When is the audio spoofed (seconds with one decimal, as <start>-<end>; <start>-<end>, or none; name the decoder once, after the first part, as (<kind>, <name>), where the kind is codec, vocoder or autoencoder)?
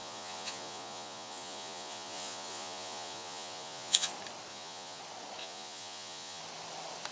0.0-4.1 (vocoder, Vocos); 4.5-5.0; 5.4-6.4